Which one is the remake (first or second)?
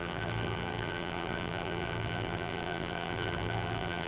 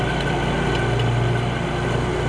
first